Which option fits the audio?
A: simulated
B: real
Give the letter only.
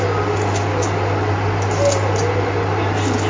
B